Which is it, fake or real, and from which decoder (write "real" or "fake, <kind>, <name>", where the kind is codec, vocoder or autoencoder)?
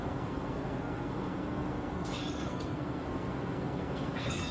fake, codec, SNAC